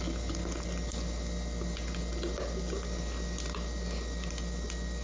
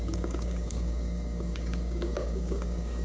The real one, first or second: first